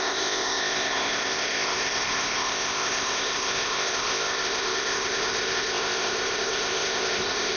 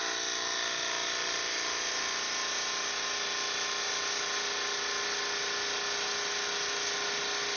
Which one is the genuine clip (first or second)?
second